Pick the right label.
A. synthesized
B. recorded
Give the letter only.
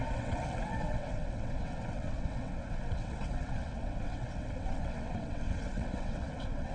A